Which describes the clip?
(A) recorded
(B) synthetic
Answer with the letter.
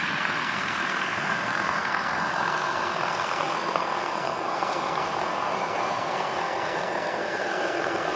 B